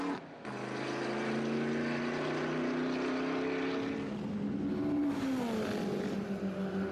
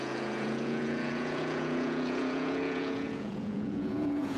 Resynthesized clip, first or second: second